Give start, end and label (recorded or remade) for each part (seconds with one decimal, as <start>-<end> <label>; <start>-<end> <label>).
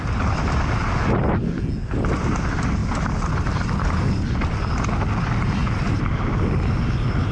0.0-2.8 recorded; 2.8-4.0 remade; 4.0-5.6 recorded; 5.6-6.6 remade; 6.6-7.3 recorded